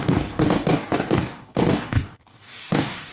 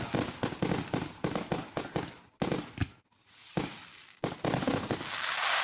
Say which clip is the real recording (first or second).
second